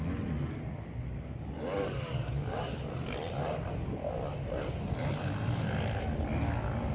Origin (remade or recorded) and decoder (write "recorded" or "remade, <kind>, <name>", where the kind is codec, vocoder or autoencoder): recorded